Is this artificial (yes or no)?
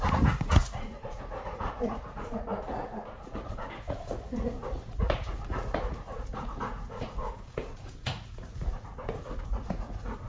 yes